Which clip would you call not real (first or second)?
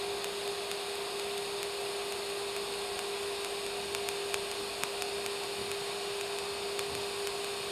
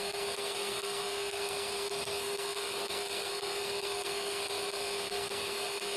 second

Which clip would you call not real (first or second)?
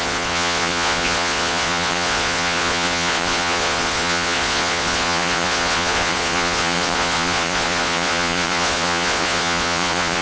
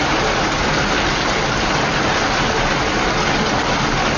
first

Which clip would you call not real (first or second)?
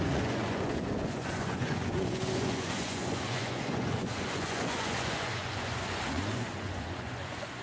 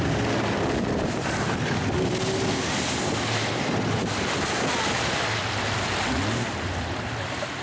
first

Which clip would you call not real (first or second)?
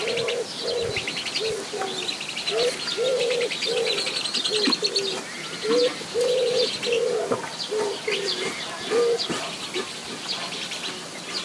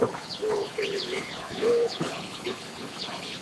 second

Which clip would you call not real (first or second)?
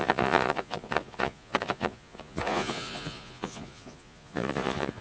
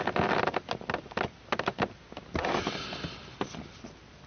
first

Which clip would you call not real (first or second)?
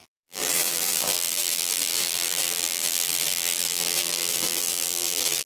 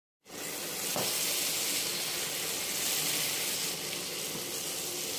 first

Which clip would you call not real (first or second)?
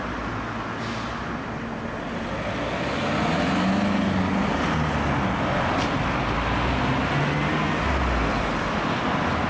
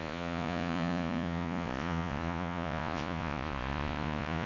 second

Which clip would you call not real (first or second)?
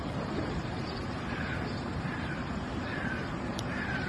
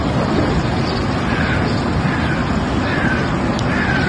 first